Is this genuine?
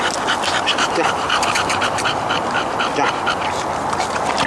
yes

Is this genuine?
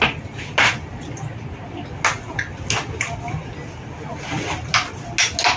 yes